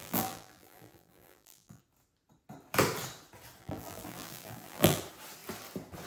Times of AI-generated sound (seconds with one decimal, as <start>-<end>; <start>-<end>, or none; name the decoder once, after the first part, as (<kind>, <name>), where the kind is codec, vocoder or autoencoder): 0.0-1.8 (vocoder, BigVGAN v2); 3.6-5.0